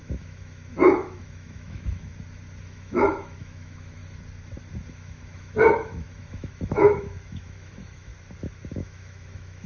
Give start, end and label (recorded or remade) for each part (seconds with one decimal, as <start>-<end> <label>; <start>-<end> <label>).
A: 0.0-2.1 remade; 2.1-2.6 recorded; 2.6-4.0 remade; 4.0-4.9 recorded; 4.9-8.1 remade; 8.1-8.7 recorded; 8.7-9.7 remade